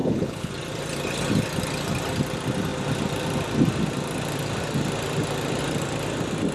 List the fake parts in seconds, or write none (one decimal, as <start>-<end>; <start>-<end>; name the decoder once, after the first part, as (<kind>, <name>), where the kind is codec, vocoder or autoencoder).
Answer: 0.0-0.5 (codec, HILCodec)